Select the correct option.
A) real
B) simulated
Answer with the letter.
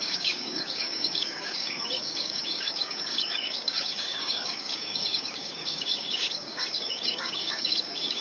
B